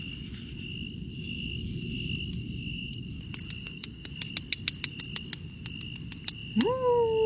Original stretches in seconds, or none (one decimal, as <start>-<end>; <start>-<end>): 0.0-3.6; 4.1-7.3